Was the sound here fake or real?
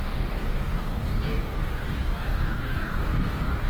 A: fake